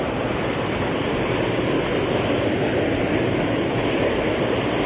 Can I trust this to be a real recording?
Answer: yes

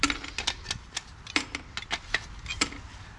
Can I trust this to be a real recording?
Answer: yes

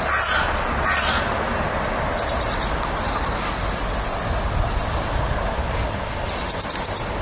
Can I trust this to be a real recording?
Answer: yes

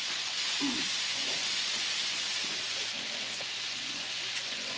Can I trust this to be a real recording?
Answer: no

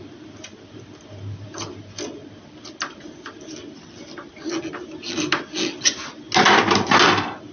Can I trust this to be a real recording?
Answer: yes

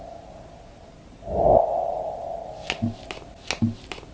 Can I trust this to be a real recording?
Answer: yes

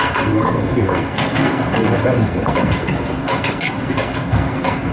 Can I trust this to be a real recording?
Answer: no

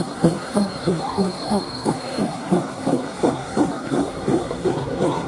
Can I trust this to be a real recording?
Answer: no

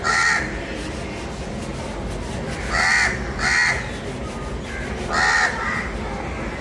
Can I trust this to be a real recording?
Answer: yes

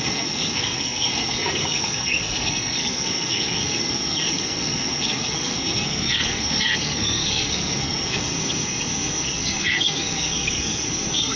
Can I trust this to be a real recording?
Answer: no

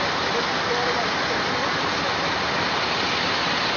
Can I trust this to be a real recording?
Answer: yes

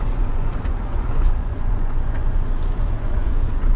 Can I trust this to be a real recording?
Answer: no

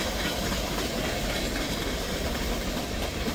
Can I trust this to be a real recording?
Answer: no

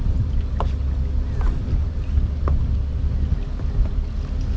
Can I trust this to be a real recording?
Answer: yes